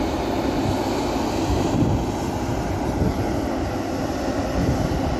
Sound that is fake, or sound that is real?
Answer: real